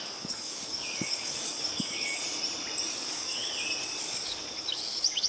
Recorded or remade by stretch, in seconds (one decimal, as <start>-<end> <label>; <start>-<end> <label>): 0.0-2.2 remade; 2.2-2.9 recorded; 2.9-3.4 remade; 3.4-4.0 recorded; 4.0-5.3 remade